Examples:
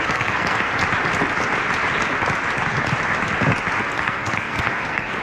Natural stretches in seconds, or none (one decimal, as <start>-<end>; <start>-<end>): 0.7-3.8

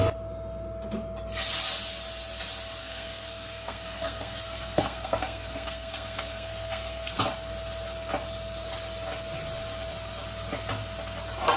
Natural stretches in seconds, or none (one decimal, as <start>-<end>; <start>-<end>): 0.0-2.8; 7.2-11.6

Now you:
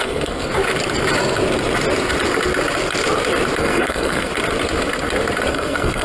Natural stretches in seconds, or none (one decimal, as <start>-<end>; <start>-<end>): 0.5-3.6; 4.3-5.5

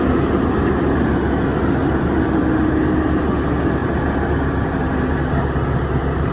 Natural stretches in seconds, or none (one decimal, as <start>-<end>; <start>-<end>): 0.0-6.3

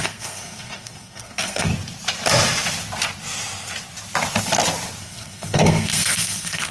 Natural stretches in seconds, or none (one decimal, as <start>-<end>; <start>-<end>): 1.7-5.0

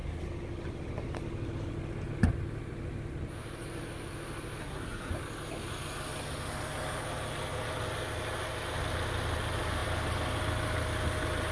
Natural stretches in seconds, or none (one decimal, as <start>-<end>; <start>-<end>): 0.0-4.6; 5.1-11.5

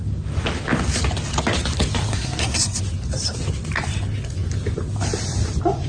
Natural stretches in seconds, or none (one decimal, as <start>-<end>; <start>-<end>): 0.0-2.1; 2.8-5.9